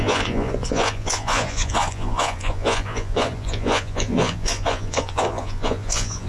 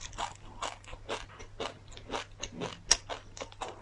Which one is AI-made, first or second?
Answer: first